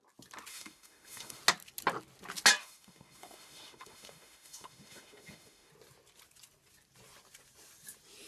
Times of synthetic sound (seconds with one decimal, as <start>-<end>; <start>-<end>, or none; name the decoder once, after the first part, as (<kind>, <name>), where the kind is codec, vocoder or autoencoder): 0.5-1.4 (autoencoder, DAC-VAE); 2.6-5.7